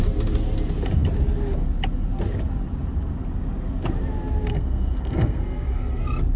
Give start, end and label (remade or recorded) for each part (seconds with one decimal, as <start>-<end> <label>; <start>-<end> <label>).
0.0-4.5 recorded; 4.5-6.0 remade; 6.0-6.4 recorded